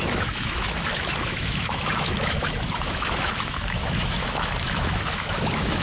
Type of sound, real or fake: fake